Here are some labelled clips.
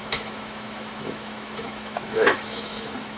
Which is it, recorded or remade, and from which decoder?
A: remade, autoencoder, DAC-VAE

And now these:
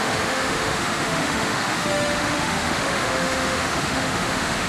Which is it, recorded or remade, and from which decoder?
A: remade, autoencoder, DAC-VAE